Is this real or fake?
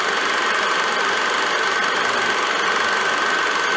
real